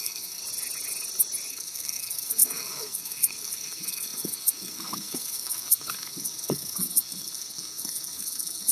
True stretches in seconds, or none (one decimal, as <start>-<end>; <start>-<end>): 0.4-1.5